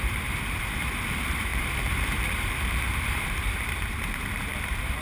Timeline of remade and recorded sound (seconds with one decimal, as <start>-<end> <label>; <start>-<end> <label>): 0.0-5.0 remade